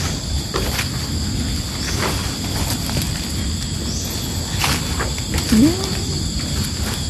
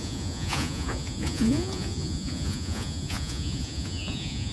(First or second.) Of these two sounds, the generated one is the second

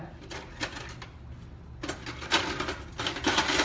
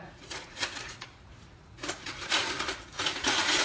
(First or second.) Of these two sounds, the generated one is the second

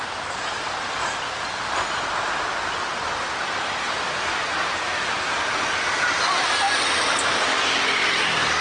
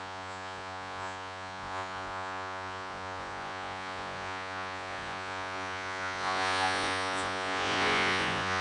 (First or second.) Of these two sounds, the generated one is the second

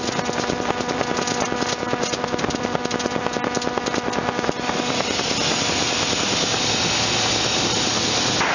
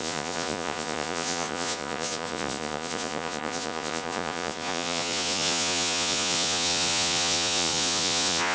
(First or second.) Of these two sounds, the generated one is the second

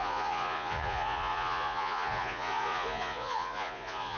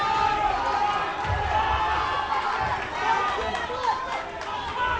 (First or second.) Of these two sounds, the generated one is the first